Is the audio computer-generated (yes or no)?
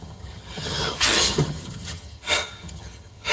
yes